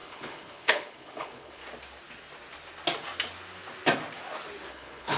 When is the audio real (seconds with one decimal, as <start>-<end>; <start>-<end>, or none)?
1.6-4.7